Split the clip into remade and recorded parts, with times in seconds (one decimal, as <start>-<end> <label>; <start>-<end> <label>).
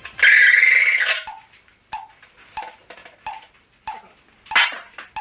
0.0-5.2 recorded